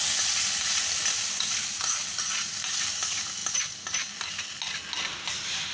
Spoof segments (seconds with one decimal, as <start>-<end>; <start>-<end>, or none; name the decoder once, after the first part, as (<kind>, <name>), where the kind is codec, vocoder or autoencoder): none